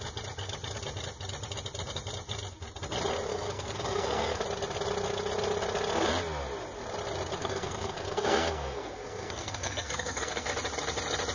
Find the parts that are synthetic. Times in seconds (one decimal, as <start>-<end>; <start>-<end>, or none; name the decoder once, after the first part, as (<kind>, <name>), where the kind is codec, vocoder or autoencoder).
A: 3.3-4.4 (codec, SNAC); 7.4-10.5